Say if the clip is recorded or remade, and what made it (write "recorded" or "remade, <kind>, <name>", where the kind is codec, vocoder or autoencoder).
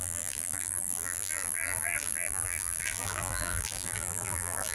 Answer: remade, vocoder, BigVGAN v2